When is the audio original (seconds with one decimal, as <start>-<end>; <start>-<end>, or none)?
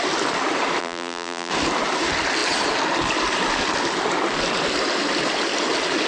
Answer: 0.0-0.8; 1.5-6.1